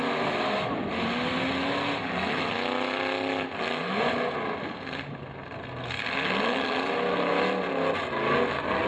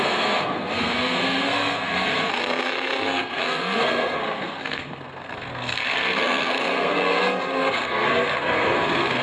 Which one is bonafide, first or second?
first